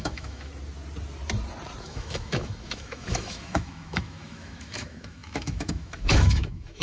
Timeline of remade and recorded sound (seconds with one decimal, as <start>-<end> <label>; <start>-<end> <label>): 0.0-0.5 remade; 0.5-1.8 recorded; 1.8-6.8 remade